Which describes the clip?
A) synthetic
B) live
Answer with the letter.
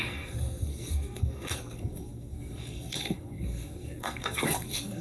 A